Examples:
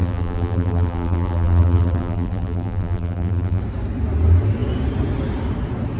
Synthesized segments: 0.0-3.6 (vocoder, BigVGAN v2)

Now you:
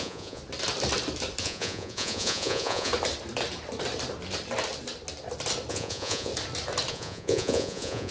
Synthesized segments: 0.0-0.4 (vocoder, Vocos); 1.4-2.9; 5.7-6.3; 6.9-8.1

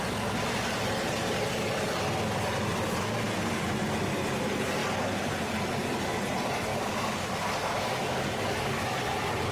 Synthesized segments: 6.7-9.0 (codec, DAC)

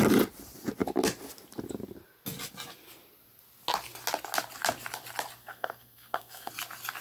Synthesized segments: 5.4-6.5 (codec, SNAC)

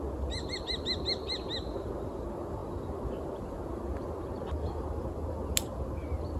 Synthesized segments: none

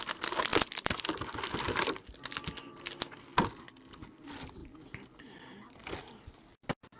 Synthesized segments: none

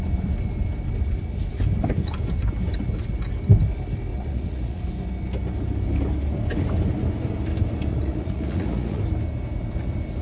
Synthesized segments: 4.1-4.8 (vocoder, Vocos); 7.9-9.0